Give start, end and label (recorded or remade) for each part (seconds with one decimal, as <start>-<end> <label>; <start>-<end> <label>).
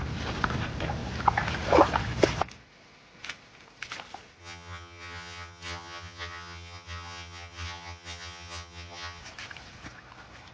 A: 0.0-4.4 recorded; 4.4-9.2 remade; 9.2-10.5 recorded